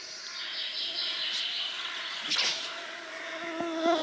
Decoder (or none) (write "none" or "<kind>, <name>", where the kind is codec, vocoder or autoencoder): none